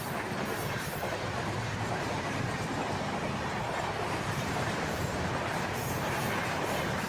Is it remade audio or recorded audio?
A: remade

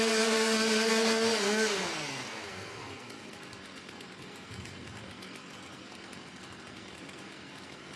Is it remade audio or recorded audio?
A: remade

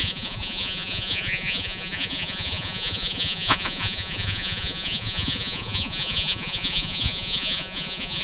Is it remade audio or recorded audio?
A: remade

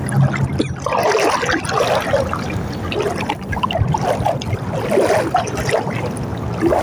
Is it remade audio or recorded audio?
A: recorded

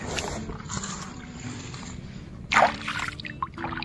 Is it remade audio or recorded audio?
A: remade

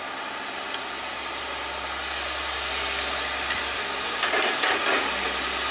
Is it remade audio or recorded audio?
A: recorded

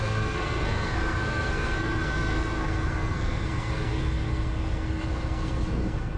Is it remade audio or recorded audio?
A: remade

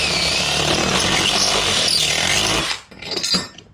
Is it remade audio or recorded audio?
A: recorded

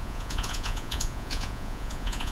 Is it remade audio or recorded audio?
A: remade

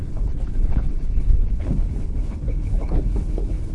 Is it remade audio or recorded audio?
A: remade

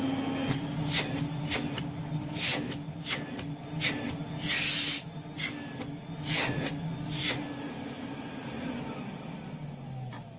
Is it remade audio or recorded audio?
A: recorded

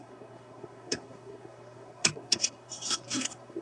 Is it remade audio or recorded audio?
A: remade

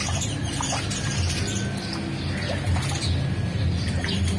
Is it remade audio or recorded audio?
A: recorded